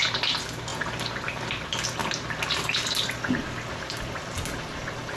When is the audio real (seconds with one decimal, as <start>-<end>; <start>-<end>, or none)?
0.0-5.2